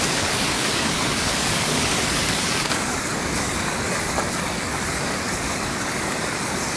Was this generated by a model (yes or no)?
yes